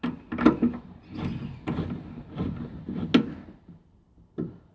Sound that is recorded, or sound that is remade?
recorded